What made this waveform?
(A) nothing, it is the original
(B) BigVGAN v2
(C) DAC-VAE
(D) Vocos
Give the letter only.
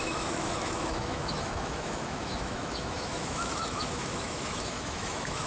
C